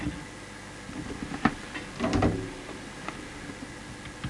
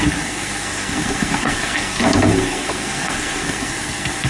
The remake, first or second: second